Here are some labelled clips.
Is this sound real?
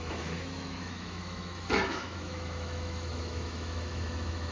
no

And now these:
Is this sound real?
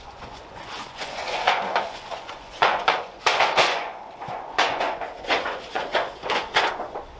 no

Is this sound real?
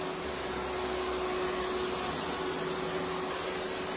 yes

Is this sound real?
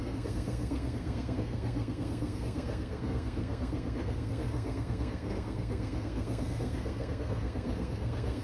no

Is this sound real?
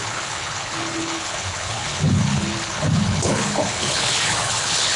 no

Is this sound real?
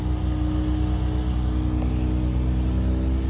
yes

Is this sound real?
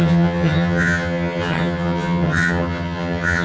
no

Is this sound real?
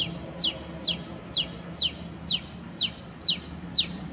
yes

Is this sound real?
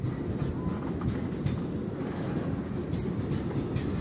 yes